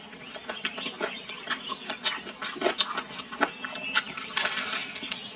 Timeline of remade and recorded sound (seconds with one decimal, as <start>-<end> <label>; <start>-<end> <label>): 0.0-5.4 recorded